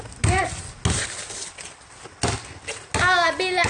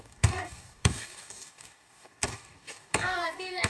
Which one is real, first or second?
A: first